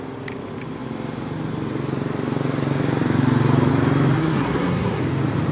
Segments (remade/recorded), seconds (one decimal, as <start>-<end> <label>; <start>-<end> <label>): 0.0-4.2 recorded; 4.2-5.0 remade; 5.0-5.5 recorded